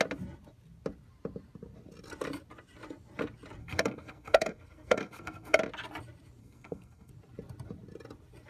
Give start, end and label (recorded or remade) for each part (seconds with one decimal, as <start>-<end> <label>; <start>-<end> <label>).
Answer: 0.0-3.6 recorded; 3.6-5.6 remade; 5.6-6.4 recorded; 6.4-7.1 remade; 7.1-8.5 recorded